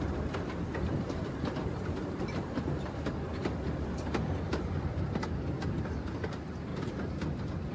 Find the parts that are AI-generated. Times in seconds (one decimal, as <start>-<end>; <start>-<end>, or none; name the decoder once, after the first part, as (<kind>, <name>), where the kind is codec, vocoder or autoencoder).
0.0-6.7 (vocoder, BigVGAN v2)